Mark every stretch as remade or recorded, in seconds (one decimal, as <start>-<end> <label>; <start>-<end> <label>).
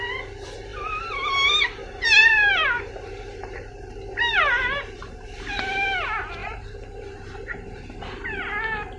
0.0-0.7 recorded; 0.7-5.6 remade; 5.6-6.4 recorded; 6.4-7.7 remade; 7.7-9.0 recorded